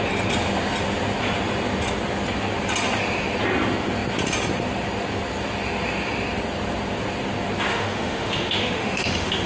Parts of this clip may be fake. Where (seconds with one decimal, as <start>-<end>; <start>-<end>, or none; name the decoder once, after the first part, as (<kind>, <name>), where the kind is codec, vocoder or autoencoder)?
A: 7.7-9.5 (autoencoder, DAC-VAE)